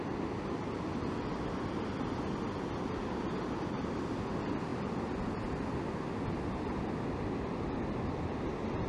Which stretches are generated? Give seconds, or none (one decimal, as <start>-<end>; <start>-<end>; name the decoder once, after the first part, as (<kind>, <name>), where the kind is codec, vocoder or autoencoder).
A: none